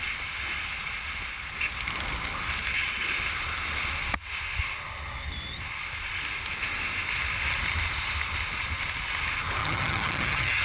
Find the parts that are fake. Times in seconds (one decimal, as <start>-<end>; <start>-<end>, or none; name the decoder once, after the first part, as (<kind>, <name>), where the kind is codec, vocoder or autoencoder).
9.6-10.6 (vocoder, HiFi-GAN)